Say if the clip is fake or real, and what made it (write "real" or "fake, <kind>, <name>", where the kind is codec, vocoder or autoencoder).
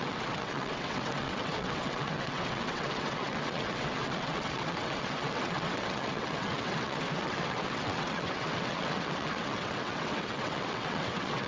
fake, vocoder, WaveNeXt